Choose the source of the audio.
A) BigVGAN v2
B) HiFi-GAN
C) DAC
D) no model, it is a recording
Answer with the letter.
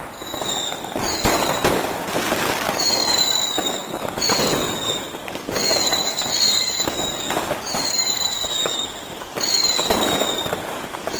C